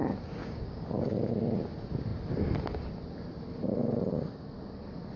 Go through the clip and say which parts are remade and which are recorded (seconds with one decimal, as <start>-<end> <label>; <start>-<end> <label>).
0.0-0.4 recorded; 0.4-1.3 remade; 1.3-5.2 recorded